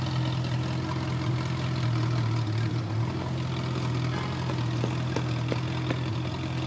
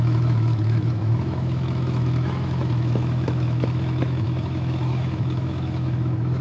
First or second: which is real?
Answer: first